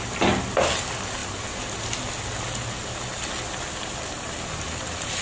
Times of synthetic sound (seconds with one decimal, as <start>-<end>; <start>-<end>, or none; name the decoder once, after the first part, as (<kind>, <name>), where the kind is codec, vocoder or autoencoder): none